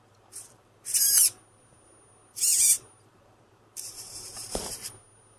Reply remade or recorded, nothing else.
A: remade